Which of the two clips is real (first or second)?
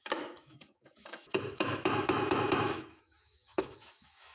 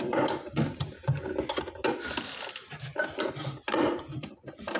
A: second